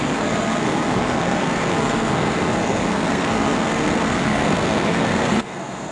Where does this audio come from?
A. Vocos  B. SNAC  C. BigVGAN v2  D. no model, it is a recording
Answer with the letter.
B